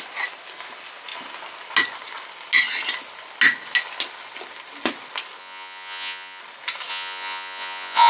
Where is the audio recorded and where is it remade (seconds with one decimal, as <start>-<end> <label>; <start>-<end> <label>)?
0.0-5.4 recorded; 5.4-6.4 remade; 6.4-6.9 recorded; 6.9-8.1 remade